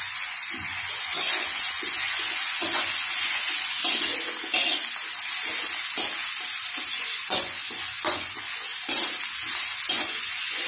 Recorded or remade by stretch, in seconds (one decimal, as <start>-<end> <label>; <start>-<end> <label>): 0.0-3.8 remade; 3.8-6.9 recorded; 6.9-8.7 remade; 8.7-9.9 recorded; 9.9-10.7 remade